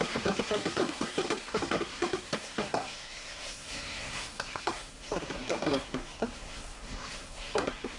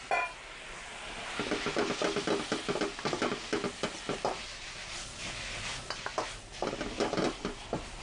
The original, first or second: second